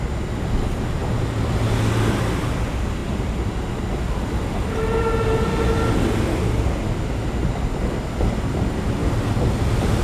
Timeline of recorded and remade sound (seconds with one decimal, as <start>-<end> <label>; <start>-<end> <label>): 0.0-10.0 recorded